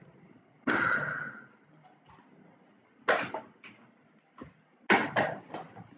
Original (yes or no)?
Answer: yes